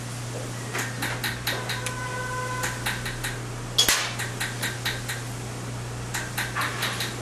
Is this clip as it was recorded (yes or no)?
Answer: yes